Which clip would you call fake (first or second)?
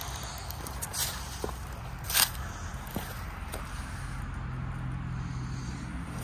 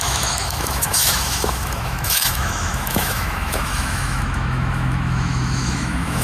second